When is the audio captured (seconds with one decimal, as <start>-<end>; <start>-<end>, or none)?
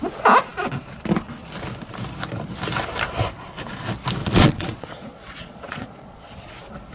0.0-4.2; 6.5-6.9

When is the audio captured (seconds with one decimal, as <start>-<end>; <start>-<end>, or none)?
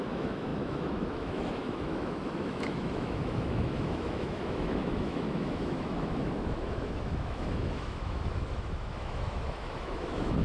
none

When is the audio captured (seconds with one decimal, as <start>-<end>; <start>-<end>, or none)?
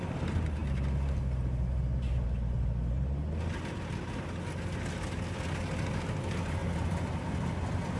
0.0-6.6; 7.5-8.0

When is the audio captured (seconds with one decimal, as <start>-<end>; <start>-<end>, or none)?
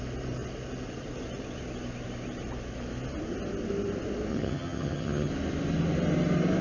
0.0-4.3; 5.3-6.6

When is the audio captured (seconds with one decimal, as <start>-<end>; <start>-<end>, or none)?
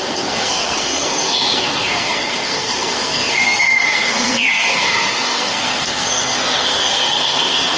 none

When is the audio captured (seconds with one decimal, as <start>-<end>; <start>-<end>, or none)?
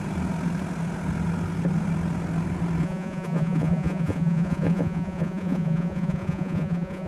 0.0-2.8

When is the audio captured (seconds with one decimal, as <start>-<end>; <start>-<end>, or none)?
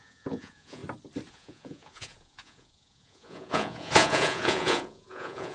0.8-1.3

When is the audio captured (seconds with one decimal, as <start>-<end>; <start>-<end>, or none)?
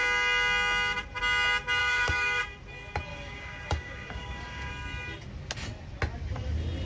0.0-1.8; 2.4-3.1; 4.7-6.9